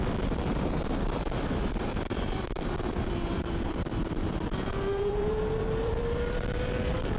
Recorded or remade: remade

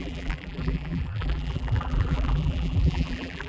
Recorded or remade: remade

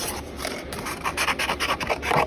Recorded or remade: remade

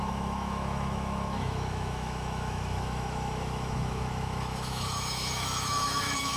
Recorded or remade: remade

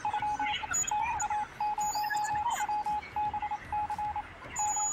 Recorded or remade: recorded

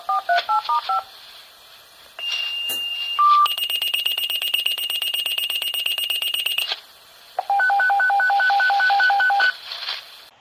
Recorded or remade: recorded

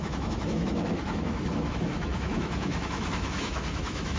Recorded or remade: remade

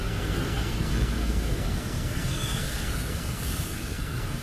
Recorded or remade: remade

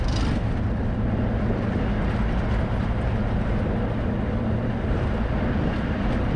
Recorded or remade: recorded